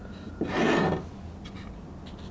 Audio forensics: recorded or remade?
recorded